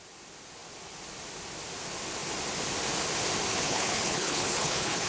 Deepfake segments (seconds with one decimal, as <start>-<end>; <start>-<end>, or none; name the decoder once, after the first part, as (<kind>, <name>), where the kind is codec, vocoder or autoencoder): 3.5-5.1 (codec, HILCodec)